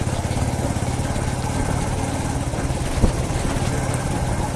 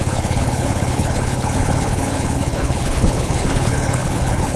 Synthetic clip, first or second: second